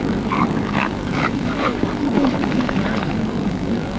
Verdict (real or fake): fake